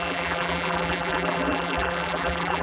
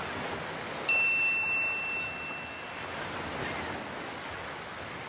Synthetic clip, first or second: first